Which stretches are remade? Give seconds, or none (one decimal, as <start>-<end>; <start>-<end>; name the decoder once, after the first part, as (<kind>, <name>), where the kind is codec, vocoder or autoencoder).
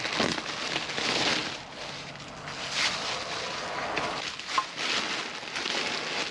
none